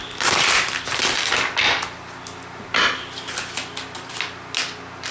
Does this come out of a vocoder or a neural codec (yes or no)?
no